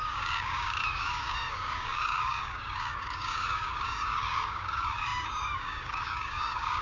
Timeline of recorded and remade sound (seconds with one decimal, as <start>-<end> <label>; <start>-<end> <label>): 0.0-6.8 remade